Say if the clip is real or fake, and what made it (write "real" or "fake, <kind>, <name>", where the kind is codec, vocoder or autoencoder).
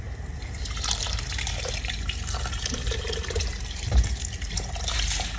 fake, vocoder, BigVGAN v2